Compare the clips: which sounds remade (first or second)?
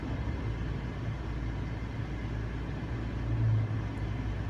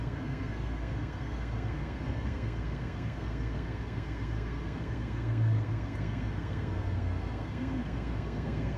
second